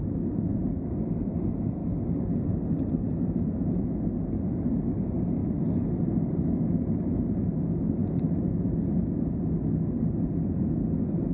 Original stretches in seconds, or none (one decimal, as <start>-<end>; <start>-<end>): 0.0-11.3